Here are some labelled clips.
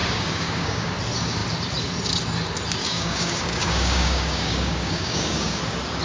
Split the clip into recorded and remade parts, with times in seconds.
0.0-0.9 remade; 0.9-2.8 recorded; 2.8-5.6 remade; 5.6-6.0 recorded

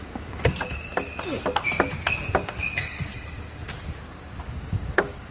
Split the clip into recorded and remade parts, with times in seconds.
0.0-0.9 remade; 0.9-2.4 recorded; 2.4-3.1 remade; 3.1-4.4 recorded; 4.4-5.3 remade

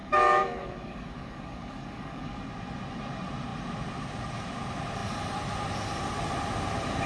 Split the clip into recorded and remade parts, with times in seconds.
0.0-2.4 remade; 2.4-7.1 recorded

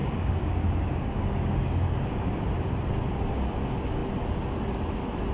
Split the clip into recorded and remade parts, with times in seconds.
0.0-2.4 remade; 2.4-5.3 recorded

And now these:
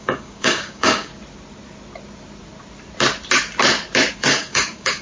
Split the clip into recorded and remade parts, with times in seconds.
0.0-1.1 remade; 1.1-4.1 recorded; 4.1-5.0 remade

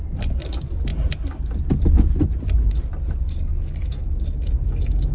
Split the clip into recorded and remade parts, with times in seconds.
0.0-5.1 recorded

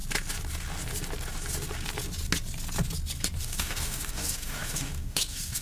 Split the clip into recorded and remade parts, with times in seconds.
0.0-3.4 recorded; 3.4-5.6 remade